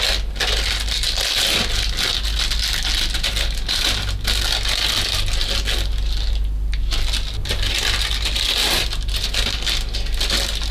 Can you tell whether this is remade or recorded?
recorded